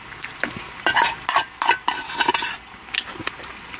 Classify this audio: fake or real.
real